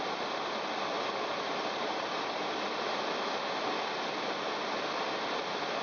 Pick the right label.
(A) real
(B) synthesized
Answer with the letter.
A